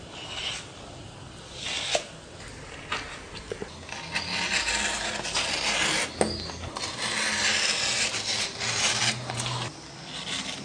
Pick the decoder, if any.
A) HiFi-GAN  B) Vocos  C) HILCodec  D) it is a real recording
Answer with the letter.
D